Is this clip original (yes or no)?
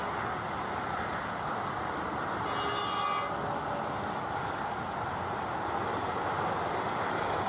yes